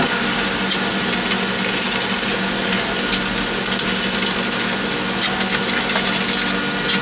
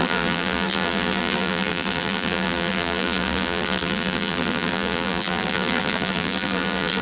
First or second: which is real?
first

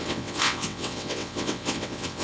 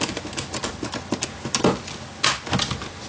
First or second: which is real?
second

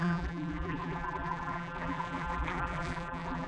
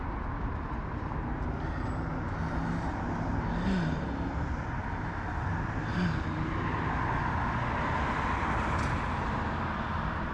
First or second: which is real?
second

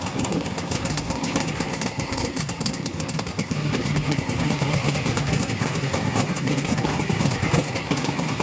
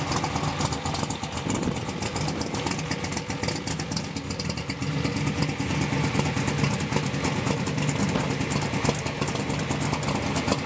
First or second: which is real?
second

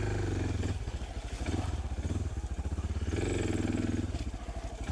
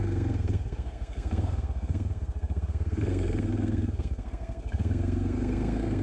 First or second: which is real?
first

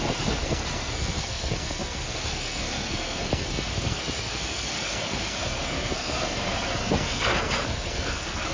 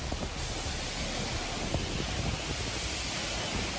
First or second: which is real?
second